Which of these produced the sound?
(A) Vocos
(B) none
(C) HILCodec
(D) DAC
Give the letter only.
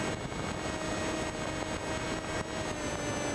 B